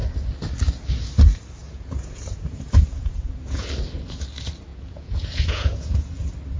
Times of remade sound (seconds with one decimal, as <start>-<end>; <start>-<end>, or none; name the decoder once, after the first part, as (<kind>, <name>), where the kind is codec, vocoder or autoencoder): 1.6-3.7 (vocoder, Vocos); 4.7-6.1